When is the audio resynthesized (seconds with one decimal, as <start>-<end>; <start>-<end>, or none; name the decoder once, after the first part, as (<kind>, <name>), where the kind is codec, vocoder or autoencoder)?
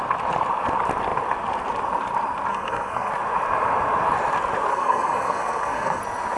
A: 2.5-3.1 (codec, SNAC); 4.7-6.0